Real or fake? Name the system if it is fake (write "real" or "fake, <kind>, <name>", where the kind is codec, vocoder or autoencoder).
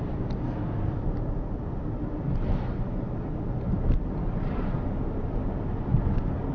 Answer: real